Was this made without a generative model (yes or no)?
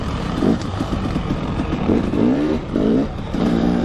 no